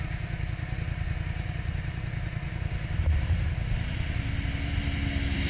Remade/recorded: recorded